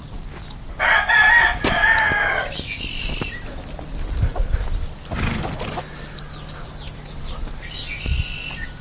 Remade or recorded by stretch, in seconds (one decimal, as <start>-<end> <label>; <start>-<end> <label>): 0.0-8.8 recorded